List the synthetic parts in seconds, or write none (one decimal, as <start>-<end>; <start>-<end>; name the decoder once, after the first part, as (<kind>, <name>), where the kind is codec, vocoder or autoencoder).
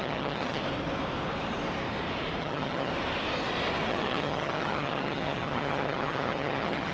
0.0-0.6 (vocoder, HiFi-GAN); 2.4-2.9; 3.9-6.9